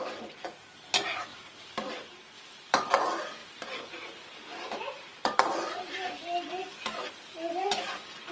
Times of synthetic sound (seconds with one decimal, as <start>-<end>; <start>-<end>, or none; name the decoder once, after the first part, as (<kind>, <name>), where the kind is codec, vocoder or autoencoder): 1.3-2.9 (vocoder, BigVGAN v2); 3.4-7.1